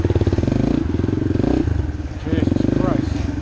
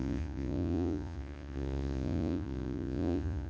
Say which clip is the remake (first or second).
second